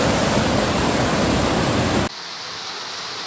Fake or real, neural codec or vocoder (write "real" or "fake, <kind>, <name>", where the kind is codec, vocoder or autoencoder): real